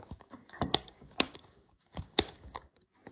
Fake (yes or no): yes